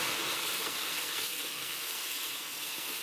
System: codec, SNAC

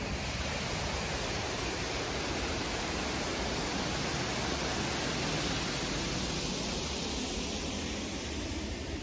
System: none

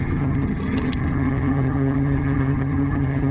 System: vocoder, HiFi-GAN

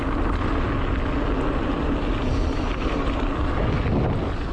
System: none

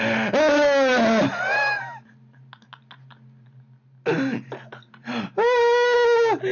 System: none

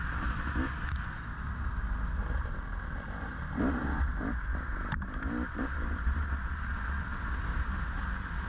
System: none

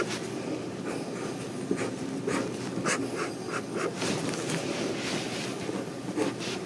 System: none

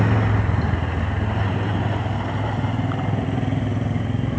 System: none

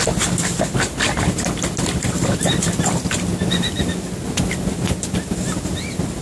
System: none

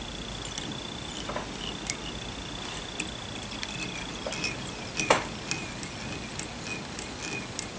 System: none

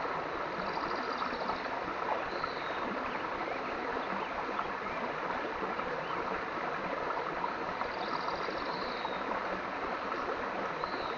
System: none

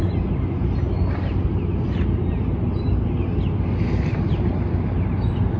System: none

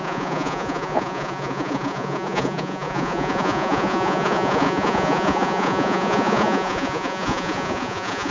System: vocoder, Vocos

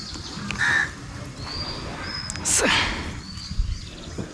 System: none